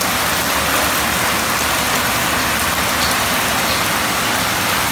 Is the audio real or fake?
real